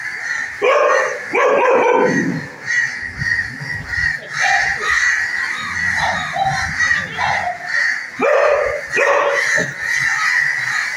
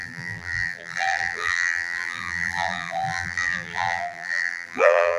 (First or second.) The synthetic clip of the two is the second